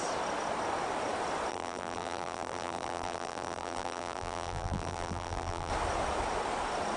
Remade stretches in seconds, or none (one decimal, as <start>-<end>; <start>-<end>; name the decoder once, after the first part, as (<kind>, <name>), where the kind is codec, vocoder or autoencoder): 1.5-5.7 (vocoder, BigVGAN v2)